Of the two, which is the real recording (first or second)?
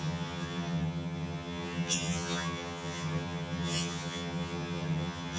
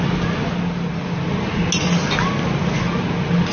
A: second